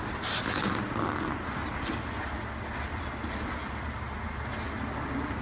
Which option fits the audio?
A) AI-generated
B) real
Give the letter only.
B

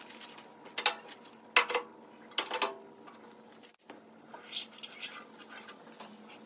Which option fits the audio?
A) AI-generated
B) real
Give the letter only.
B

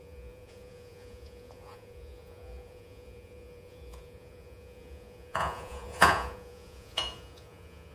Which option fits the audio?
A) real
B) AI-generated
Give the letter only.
B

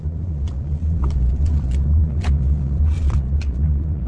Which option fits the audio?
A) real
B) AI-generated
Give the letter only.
B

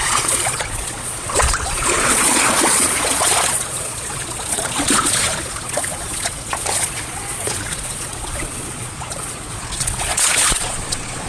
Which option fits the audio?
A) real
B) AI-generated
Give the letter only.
B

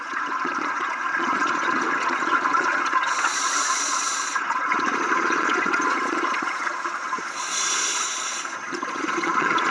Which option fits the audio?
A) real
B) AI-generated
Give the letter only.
B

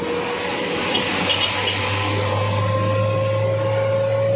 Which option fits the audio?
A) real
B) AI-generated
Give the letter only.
A